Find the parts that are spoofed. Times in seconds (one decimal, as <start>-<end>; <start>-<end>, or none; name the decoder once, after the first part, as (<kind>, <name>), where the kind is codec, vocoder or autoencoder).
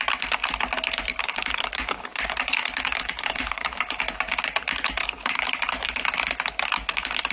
1.1-4.0 (codec, DAC); 5.0-6.0